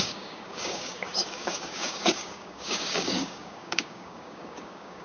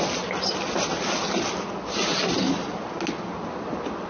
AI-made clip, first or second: first